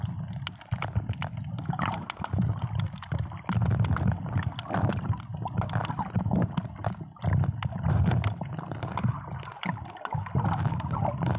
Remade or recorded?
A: recorded